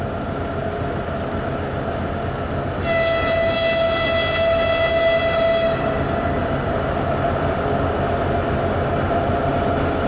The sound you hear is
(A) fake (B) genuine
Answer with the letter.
B